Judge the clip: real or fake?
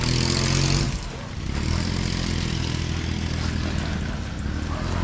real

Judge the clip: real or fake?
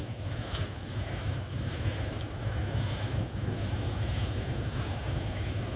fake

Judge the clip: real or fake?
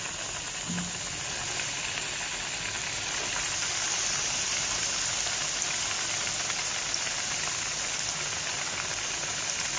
real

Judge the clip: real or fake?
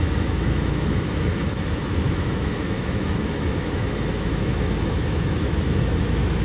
fake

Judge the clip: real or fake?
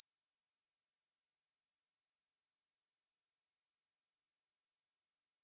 real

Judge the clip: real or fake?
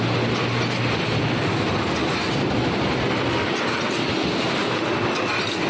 real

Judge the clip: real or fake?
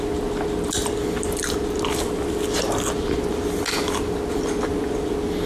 real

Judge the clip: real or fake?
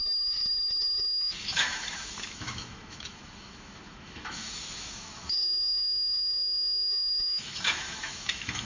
fake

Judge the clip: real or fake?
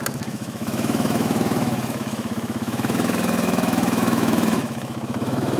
fake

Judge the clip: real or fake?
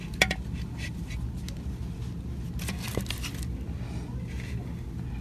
real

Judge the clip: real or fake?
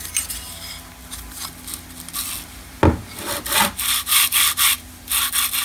real